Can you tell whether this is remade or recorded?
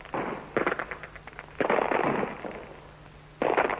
recorded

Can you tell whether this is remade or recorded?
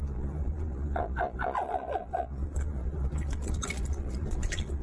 remade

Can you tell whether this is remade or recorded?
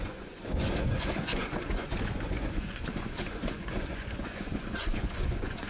remade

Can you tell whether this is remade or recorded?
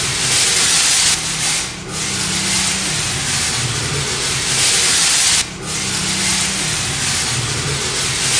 recorded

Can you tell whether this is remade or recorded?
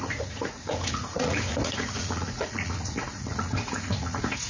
remade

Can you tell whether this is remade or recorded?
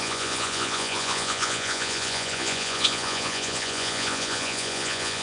remade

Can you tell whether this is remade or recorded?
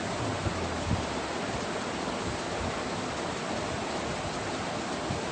recorded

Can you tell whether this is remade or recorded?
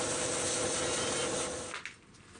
recorded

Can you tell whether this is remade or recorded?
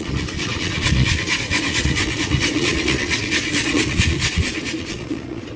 remade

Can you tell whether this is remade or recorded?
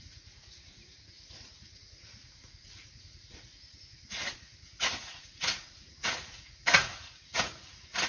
remade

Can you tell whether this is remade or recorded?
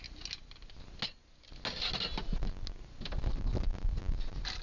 recorded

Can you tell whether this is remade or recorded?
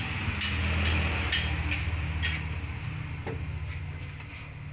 recorded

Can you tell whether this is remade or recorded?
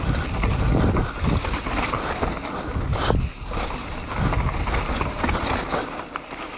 recorded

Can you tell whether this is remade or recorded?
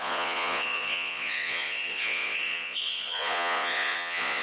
remade